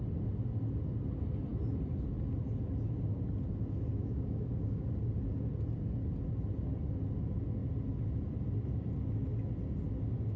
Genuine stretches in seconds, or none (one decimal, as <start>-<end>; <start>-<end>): 0.0-4.0; 4.8-10.4